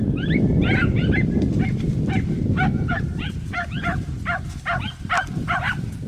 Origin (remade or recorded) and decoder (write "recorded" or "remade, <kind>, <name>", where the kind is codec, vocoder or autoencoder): remade, vocoder, BigVGAN v2